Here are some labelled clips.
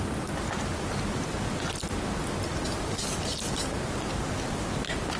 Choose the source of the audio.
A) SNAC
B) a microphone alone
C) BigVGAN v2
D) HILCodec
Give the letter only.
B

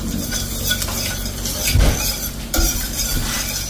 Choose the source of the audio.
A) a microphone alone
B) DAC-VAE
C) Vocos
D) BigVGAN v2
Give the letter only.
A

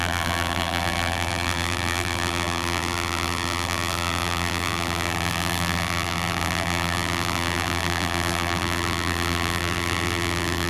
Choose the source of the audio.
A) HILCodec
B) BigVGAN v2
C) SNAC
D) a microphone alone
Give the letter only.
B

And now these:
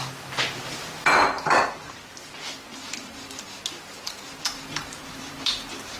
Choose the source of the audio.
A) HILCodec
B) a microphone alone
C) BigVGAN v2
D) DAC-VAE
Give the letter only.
B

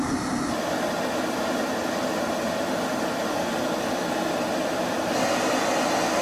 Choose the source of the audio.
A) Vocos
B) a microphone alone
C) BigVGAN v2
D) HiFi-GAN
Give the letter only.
B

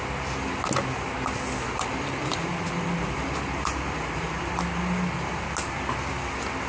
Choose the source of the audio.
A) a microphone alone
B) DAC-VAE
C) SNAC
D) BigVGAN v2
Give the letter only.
A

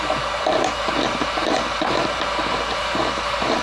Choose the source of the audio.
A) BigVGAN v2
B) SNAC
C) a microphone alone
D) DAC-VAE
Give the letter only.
A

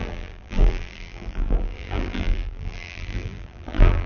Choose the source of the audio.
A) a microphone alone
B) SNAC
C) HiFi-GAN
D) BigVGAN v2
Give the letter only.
D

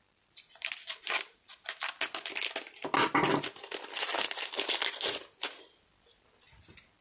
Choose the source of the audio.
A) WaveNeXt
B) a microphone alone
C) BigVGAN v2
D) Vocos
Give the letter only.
B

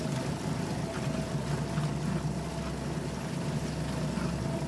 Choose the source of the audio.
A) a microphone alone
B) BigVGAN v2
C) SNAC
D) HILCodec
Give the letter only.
A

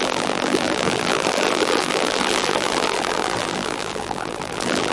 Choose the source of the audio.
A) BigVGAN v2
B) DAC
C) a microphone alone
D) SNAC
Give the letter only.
A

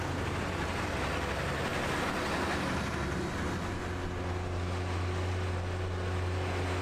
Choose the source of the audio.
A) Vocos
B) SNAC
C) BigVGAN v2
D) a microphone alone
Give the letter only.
D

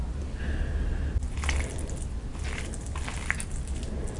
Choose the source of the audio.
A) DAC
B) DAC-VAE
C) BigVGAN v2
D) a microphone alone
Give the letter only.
D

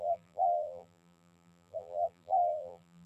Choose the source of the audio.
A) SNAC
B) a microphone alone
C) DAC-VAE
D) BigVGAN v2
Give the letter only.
D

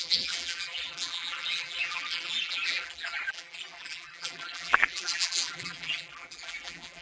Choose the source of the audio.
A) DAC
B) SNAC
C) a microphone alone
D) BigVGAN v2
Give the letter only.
D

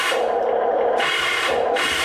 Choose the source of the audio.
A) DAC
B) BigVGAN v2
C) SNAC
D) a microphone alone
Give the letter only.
B